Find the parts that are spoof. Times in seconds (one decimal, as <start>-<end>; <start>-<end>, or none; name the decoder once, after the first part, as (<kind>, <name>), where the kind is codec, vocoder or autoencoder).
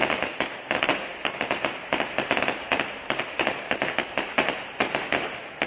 none